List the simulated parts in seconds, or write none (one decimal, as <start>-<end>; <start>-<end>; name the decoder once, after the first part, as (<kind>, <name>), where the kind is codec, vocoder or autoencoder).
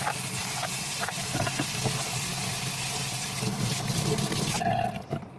0.4-1.8 (vocoder, BigVGAN v2)